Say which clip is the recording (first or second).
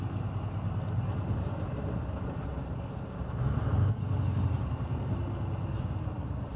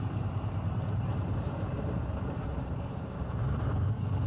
first